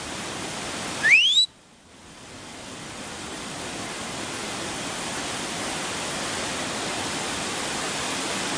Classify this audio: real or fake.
fake